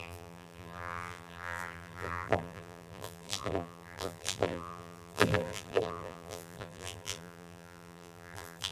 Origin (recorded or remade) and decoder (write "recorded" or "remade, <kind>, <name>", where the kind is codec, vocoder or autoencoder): remade, vocoder, BigVGAN v2